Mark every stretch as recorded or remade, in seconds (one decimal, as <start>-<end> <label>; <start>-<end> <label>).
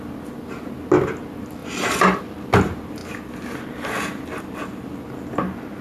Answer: 0.0-5.8 recorded